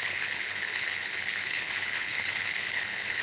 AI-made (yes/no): yes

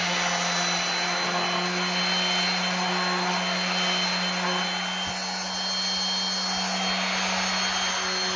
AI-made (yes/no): no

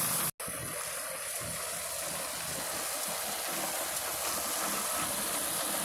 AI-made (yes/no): no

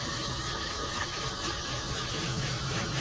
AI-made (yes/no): yes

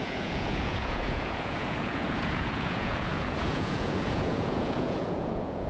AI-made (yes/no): yes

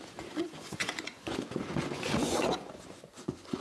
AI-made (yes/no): yes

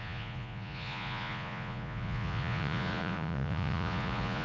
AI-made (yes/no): yes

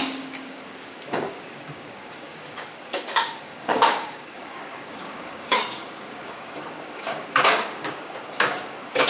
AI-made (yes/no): yes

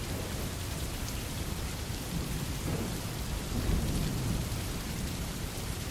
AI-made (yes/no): yes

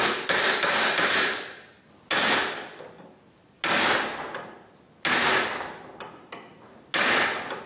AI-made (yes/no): no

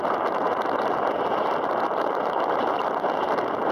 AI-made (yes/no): yes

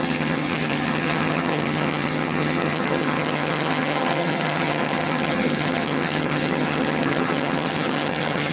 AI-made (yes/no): yes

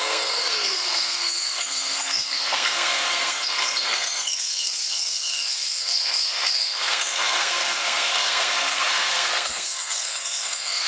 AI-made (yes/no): yes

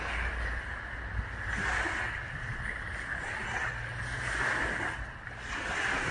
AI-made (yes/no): no